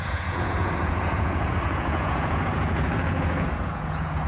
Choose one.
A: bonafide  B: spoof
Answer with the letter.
B